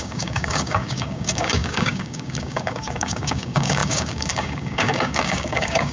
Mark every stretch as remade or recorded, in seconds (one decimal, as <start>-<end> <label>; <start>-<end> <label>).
0.0-5.9 remade